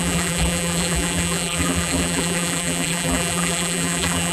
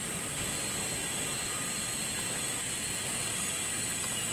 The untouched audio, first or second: second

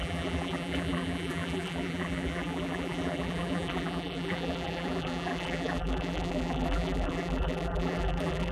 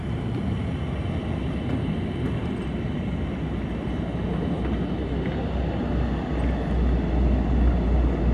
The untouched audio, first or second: second